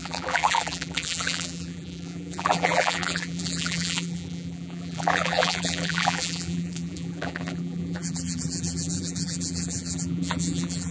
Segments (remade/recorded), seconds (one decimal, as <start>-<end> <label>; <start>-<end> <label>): 0.0-10.9 remade